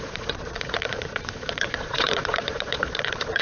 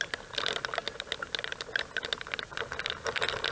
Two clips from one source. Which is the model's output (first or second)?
first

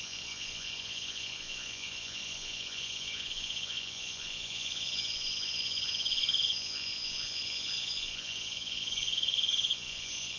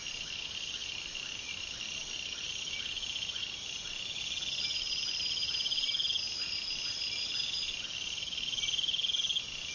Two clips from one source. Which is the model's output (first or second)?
first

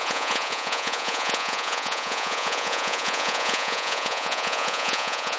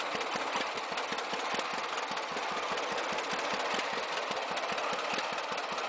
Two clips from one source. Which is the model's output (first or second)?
first